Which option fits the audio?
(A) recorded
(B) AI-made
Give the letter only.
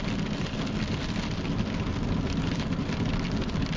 A